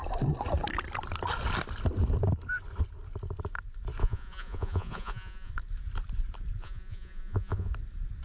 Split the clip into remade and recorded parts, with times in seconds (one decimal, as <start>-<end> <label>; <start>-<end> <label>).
0.0-4.0 recorded; 4.0-5.5 remade; 5.5-6.6 recorded; 6.6-7.7 remade; 7.7-8.2 recorded